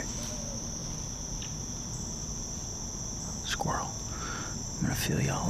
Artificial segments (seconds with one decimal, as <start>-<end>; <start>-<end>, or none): none